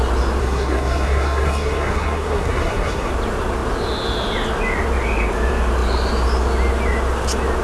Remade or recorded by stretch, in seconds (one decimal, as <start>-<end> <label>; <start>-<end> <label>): 0.0-0.4 recorded; 0.4-3.1 remade; 3.1-7.6 recorded